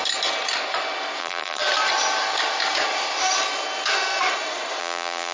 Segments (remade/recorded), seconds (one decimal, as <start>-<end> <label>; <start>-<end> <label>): 0.0-1.2 recorded; 1.2-1.6 remade; 1.6-4.8 recorded; 4.8-5.3 remade